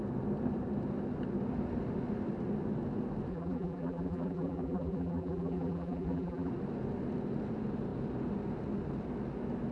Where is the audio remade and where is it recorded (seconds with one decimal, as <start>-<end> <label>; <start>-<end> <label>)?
0.0-3.3 recorded; 3.3-6.5 remade; 6.5-9.7 recorded